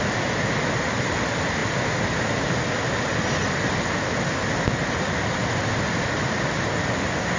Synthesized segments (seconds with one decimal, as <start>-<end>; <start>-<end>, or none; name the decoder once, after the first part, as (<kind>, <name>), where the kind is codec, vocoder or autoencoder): none